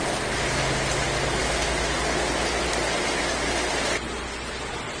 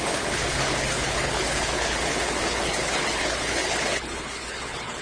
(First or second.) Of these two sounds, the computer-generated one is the second